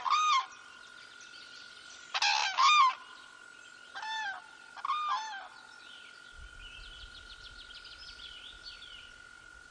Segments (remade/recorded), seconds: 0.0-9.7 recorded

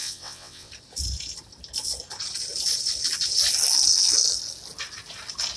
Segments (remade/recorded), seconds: 0.0-0.7 remade; 0.7-5.6 recorded

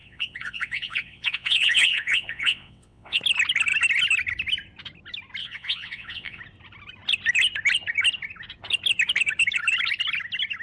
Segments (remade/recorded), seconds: 0.0-3.2 remade; 3.2-5.4 recorded; 5.4-6.4 remade; 6.4-10.6 recorded

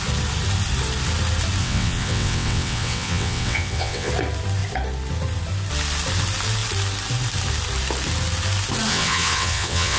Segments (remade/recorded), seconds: 0.0-1.6 recorded; 1.6-4.1 remade; 4.1-8.9 recorded; 8.9-10.0 remade

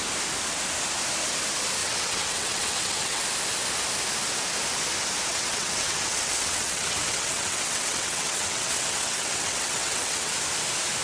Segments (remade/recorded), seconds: 0.0-1.8 recorded; 1.8-3.2 remade; 3.2-5.3 recorded; 5.3-10.3 remade; 10.3-11.0 recorded